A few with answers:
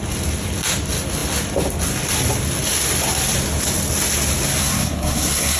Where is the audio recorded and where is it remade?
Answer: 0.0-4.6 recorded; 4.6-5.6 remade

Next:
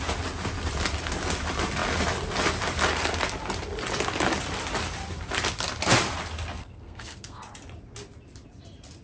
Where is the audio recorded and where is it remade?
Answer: 0.0-6.6 recorded; 6.6-7.4 remade; 7.4-9.0 recorded

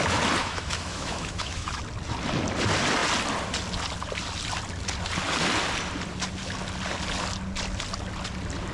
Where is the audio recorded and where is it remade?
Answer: 0.0-0.4 recorded; 0.4-1.8 remade; 1.8-8.7 recorded

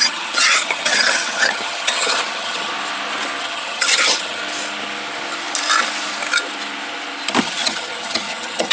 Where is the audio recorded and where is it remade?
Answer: 0.0-2.7 remade; 2.7-3.4 recorded; 3.4-4.4 remade; 4.4-7.4 recorded; 7.4-8.7 remade

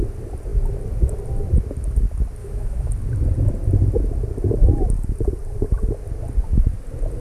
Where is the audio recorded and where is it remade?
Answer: 0.0-2.4 recorded; 2.4-2.9 remade; 2.9-7.2 recorded

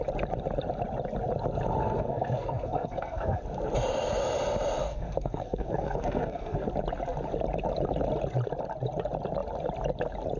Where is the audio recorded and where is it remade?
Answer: 0.0-1.8 recorded; 1.8-3.4 remade; 3.4-4.8 recorded; 4.8-6.7 remade; 6.7-10.4 recorded